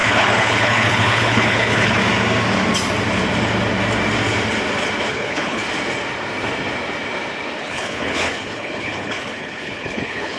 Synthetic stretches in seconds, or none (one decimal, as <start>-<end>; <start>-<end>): 0.0-2.0; 5.1-5.6; 7.6-10.4